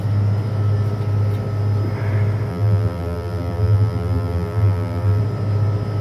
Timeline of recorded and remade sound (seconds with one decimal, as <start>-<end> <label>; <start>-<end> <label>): 0.0-2.5 recorded; 2.5-5.2 remade; 5.2-6.0 recorded